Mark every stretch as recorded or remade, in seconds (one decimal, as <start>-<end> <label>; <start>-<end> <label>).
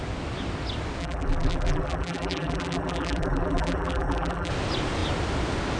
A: 0.0-1.0 recorded; 1.0-4.5 remade; 4.5-5.8 recorded